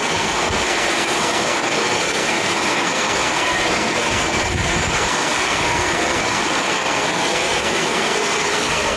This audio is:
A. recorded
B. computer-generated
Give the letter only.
B